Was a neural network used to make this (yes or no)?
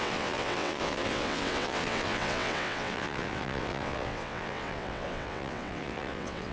yes